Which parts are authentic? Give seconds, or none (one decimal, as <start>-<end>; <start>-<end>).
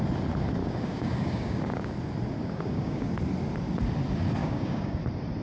0.0-0.6; 1.9-2.4; 3.1-4.4; 5.0-5.4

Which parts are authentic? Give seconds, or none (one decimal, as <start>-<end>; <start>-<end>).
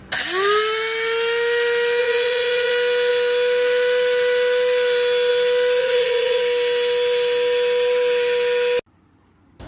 0.0-2.0; 2.7-5.8; 6.4-9.7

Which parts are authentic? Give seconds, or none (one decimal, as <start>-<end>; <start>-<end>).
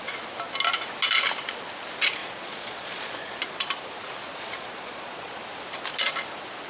0.0-2.2; 3.4-4.3; 5.4-6.7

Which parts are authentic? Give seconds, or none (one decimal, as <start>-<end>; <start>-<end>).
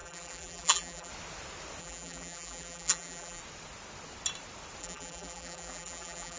1.1-1.8; 3.4-4.8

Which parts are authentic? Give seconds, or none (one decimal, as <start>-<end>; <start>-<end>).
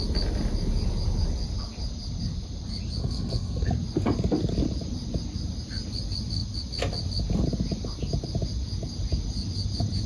0.0-3.0; 3.7-10.1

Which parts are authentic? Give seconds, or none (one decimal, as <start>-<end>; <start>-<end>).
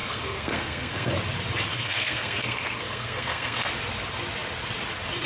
1.1-1.7; 3.7-5.3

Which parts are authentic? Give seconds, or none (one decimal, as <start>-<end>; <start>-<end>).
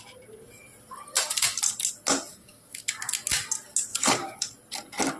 0.0-2.3; 3.0-3.9; 4.5-5.2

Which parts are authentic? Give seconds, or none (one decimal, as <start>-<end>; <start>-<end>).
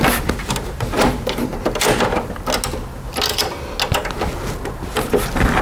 0.0-5.6